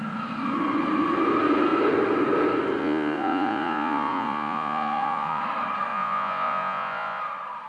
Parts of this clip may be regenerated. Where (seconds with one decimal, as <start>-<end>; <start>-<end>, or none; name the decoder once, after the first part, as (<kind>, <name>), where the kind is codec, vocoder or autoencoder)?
2.8-5.4 (vocoder, Vocos); 5.9-7.2